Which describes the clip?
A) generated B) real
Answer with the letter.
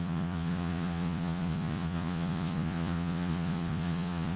A